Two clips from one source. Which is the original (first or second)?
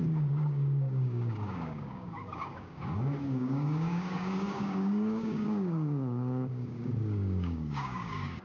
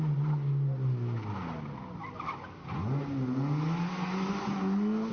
second